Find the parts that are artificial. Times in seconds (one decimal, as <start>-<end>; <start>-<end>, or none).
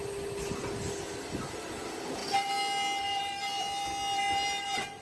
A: none